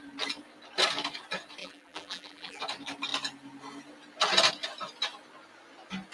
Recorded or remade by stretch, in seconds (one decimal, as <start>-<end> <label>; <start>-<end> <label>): 0.0-1.6 recorded; 1.6-2.6 remade; 2.6-6.1 recorded